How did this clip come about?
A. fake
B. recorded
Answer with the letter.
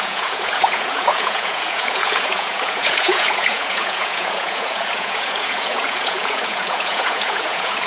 A